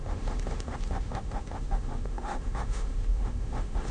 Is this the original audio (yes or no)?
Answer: no